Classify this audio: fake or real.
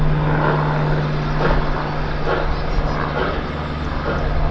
real